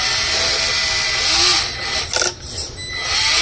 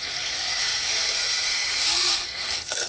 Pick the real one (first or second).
first